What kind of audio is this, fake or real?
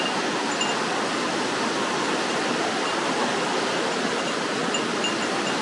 real